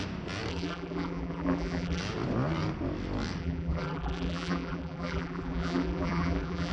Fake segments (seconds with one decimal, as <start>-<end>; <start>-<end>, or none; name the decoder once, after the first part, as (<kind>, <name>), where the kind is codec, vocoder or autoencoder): 0.5-2.0 (vocoder, BigVGAN v2); 3.4-6.7